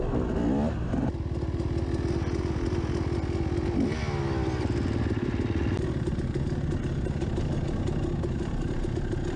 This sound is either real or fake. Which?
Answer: real